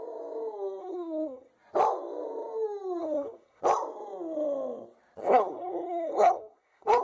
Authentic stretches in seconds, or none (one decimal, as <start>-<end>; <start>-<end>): 0.0-0.8; 1.5-3.0; 3.6-5.2